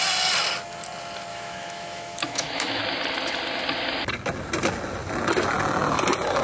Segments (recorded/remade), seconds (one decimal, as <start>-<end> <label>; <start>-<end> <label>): 0.0-1.3 recorded; 1.3-2.8 remade; 2.8-6.4 recorded